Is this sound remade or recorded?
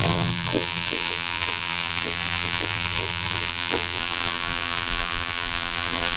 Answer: remade